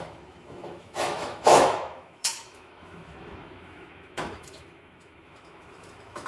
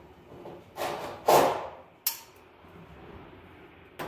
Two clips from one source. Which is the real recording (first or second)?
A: second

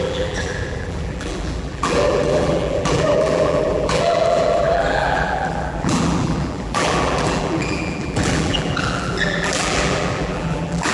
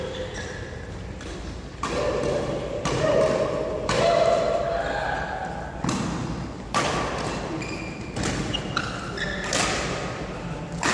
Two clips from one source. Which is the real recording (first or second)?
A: second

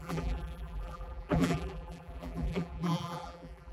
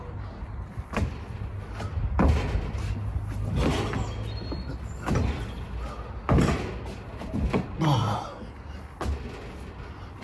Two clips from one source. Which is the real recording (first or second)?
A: second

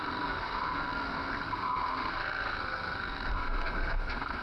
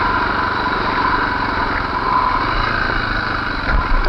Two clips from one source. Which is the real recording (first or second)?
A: second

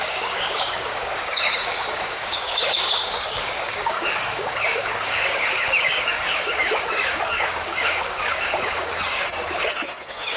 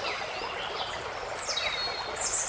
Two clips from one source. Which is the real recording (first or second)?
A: second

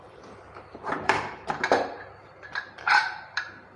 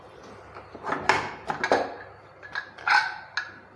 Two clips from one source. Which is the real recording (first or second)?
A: second